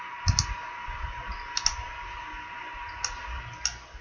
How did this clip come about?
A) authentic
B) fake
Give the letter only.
A